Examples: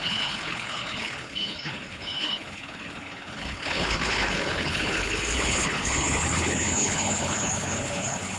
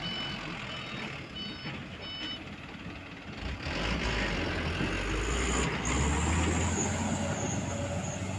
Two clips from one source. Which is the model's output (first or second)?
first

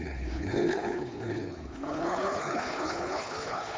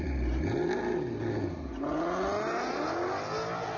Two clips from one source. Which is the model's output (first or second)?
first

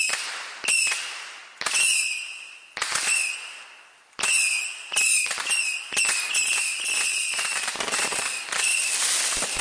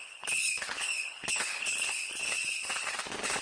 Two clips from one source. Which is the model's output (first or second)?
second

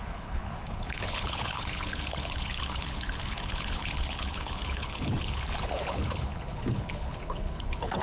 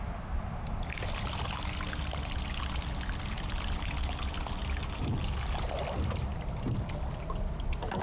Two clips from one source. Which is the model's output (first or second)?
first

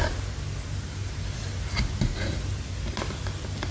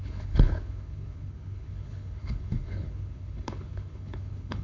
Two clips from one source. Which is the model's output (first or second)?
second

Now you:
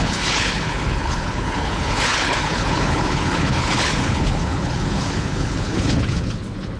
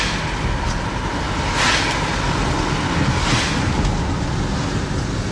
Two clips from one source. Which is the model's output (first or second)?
first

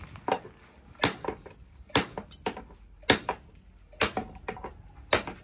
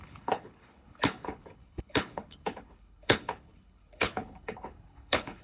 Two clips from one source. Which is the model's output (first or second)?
second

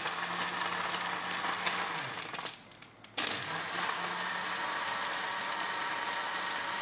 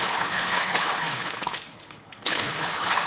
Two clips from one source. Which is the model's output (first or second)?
second